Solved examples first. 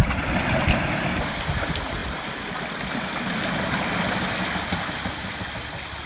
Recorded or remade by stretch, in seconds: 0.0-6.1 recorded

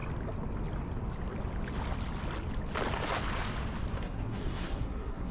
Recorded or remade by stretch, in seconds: 0.0-3.9 recorded; 3.9-5.3 remade

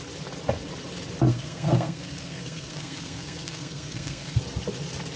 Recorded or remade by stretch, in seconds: 0.0-1.3 recorded; 1.3-4.4 remade; 4.4-5.2 recorded